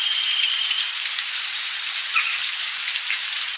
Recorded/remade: remade